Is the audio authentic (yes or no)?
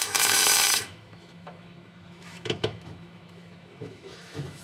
no